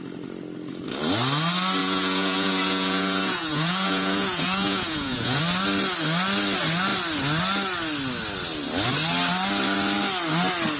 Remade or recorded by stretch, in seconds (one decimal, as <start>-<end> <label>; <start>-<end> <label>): 0.0-1.8 recorded; 1.8-5.4 remade; 5.4-10.8 recorded